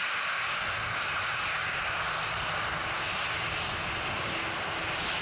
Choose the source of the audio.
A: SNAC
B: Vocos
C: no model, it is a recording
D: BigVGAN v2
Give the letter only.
C